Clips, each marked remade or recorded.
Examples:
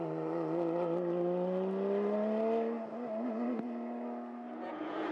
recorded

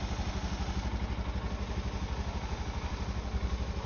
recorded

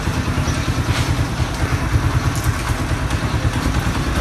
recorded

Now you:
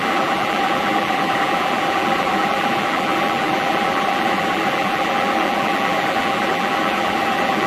remade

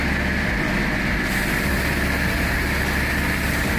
recorded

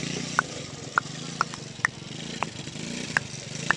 recorded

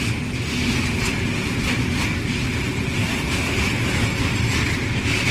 recorded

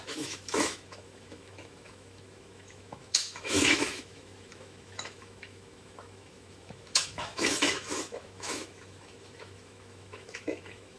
remade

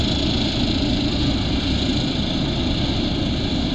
remade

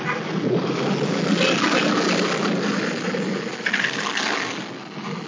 recorded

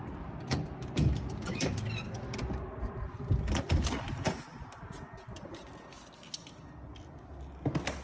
recorded